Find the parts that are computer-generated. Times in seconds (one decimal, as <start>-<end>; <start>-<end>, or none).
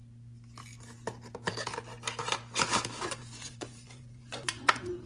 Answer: 3.1-5.1